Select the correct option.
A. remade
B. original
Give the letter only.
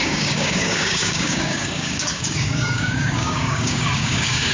A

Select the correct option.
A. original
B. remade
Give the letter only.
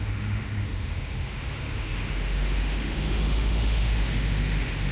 B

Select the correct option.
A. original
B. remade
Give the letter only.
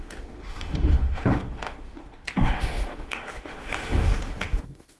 B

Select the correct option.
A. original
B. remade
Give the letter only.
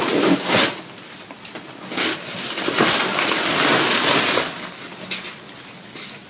A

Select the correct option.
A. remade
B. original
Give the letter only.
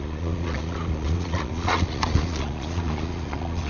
A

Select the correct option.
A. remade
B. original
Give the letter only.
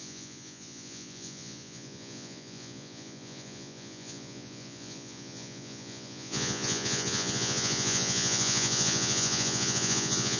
A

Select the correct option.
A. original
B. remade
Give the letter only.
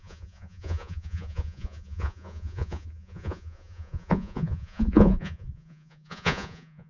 B